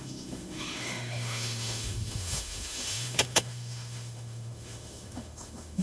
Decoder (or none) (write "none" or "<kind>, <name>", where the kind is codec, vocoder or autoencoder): autoencoder, DAC-VAE